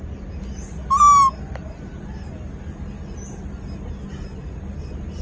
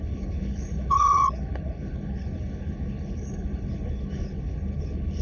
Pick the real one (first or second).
first